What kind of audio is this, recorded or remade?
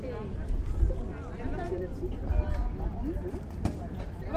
recorded